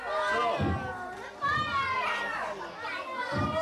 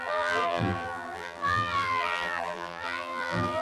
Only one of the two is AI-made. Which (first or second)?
second